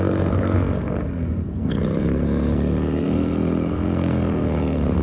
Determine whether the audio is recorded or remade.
remade